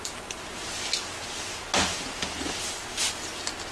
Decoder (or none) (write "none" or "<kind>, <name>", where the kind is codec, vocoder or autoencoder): none